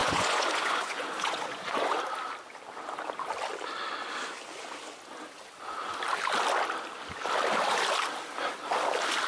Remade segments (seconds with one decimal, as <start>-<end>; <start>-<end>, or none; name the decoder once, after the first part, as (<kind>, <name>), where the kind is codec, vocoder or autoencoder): 0.0-2.0 (vocoder, Vocos)